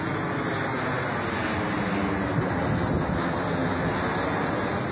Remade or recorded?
recorded